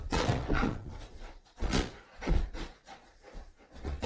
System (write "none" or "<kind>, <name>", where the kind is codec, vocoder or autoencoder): vocoder, Vocos